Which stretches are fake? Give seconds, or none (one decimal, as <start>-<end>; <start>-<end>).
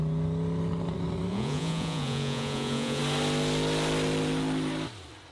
1.3-3.0